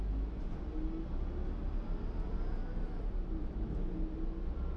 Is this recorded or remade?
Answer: recorded